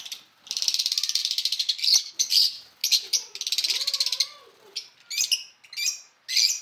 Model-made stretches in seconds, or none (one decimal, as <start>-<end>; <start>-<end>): 0.0-1.2; 2.1-2.8